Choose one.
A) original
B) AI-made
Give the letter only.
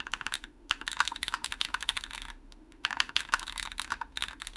B